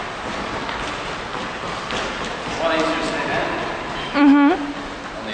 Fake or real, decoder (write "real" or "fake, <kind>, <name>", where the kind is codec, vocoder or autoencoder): real